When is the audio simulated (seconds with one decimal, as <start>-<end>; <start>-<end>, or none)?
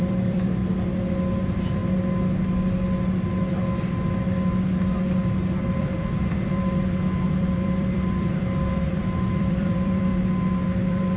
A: 0.0-0.6; 1.4-1.8; 5.8-10.1; 10.6-11.2